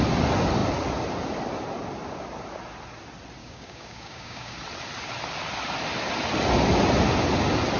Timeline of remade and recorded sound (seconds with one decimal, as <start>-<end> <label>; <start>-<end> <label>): 0.0-3.4 recorded; 3.4-4.5 remade; 4.5-7.8 recorded